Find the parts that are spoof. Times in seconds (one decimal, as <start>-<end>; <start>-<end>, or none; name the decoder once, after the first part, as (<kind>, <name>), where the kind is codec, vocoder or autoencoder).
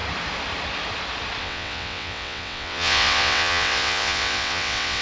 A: 1.4-5.0 (vocoder, WaveNeXt)